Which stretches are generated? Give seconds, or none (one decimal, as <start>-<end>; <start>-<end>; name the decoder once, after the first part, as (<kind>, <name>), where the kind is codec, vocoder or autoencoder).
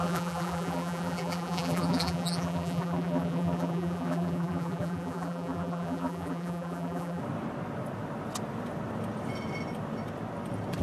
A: 0.0-7.2 (vocoder, BigVGAN v2)